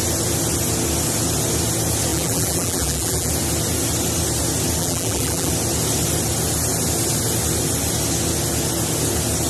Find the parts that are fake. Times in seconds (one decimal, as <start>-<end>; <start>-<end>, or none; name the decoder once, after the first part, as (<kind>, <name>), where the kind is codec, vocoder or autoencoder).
2.1-3.3 (vocoder, BigVGAN v2); 4.8-5.5